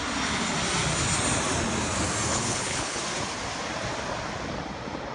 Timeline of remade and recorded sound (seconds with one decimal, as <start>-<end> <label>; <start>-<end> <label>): 0.0-2.3 recorded; 2.3-3.0 remade; 3.0-5.1 recorded